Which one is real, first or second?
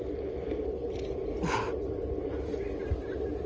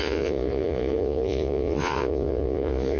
first